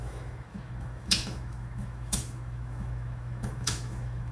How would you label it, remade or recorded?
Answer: remade